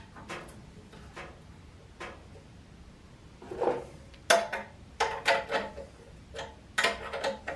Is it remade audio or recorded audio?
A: recorded